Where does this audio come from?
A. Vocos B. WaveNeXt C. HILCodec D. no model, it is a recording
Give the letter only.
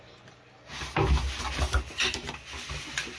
D